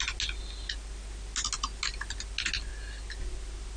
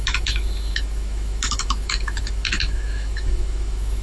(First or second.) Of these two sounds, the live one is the first